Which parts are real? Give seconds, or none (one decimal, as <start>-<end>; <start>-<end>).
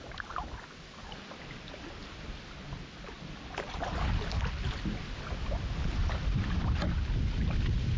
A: 0.0-8.0